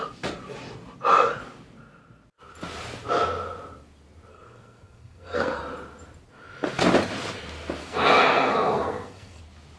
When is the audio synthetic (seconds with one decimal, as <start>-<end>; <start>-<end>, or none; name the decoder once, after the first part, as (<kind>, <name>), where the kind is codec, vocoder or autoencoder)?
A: 4.3-5.6 (codec, SNAC); 7.8-9.4